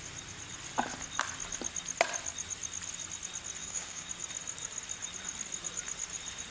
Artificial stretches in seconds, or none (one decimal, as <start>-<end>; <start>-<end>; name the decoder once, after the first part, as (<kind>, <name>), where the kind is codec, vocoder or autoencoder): 3.6-4.1 (codec, DAC)